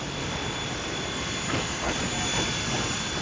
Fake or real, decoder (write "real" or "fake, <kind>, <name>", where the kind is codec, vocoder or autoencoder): real